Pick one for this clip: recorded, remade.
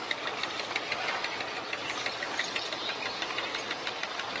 recorded